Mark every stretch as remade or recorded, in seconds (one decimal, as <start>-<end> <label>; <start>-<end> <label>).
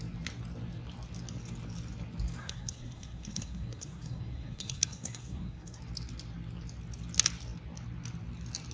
0.0-2.4 recorded; 2.4-5.8 remade; 5.8-8.7 recorded